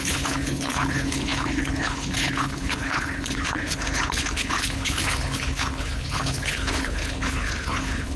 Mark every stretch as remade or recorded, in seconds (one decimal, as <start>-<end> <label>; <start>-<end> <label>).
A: 0.0-8.2 remade